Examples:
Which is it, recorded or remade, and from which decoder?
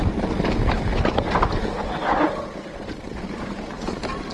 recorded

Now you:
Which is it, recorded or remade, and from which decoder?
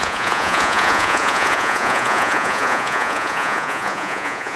remade, vocoder, Vocos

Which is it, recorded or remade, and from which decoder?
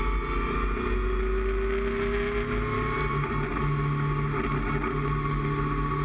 recorded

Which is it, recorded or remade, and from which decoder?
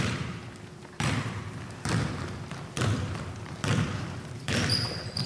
remade, vocoder, BigVGAN v2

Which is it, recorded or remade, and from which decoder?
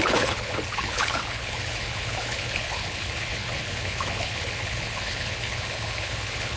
remade, codec, HILCodec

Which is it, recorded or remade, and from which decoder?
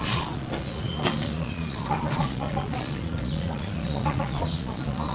remade, vocoder, Vocos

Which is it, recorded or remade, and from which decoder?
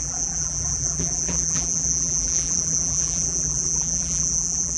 remade, vocoder, BigVGAN v2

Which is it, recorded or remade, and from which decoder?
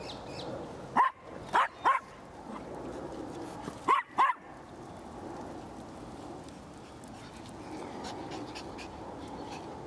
recorded